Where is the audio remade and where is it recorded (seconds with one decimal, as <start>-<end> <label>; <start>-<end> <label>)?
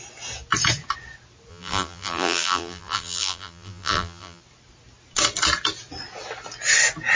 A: 0.0-1.5 recorded; 1.5-4.4 remade; 4.4-7.2 recorded